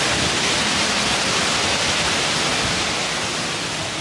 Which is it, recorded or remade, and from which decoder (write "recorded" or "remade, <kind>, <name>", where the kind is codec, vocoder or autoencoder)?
recorded